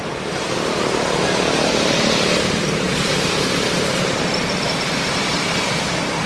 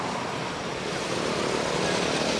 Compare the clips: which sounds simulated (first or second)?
first